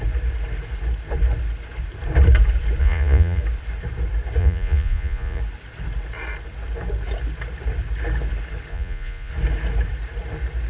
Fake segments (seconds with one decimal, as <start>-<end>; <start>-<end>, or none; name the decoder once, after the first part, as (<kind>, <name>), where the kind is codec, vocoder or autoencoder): 2.8-3.4 (vocoder, Vocos); 4.4-5.4; 8.7-9.3